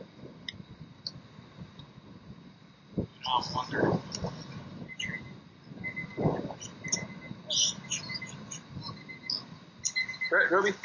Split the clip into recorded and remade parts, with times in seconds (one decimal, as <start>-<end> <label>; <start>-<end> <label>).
0.0-10.8 recorded